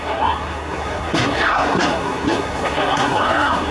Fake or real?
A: fake